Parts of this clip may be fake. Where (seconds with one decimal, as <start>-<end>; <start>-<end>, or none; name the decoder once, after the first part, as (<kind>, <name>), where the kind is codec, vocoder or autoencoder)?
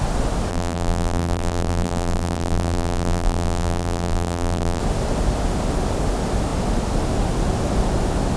0.5-4.8 (vocoder, BigVGAN v2)